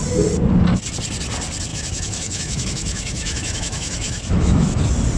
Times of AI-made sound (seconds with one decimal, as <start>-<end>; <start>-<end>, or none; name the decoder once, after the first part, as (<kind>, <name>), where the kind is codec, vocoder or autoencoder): 1.7-4.8 (autoencoder, DAC-VAE)